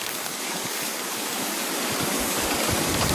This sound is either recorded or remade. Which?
remade